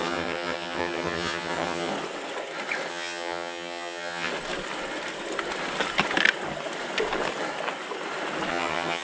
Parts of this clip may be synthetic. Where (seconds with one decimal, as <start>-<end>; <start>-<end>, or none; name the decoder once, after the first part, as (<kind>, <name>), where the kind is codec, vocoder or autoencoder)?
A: 0.0-1.9 (vocoder, HiFi-GAN); 2.9-4.3; 8.5-9.0